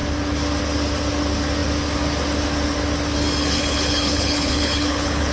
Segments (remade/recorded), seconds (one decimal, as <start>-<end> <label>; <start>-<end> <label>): 0.0-3.4 recorded; 3.4-5.3 remade